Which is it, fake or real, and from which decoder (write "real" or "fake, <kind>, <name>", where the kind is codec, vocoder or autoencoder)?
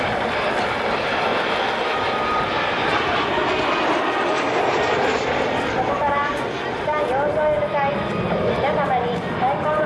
real